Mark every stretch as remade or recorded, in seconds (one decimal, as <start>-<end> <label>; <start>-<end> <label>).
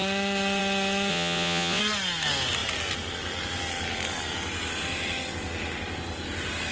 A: 0.0-1.1 recorded; 1.1-1.8 remade; 1.8-6.7 recorded